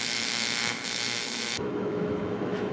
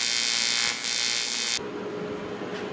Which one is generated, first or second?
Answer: first